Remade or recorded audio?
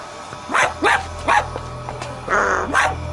recorded